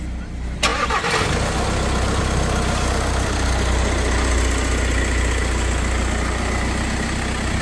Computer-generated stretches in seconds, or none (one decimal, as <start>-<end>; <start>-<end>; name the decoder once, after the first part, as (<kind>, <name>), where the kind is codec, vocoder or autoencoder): none